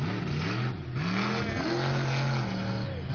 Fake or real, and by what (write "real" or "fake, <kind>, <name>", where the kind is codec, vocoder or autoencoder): real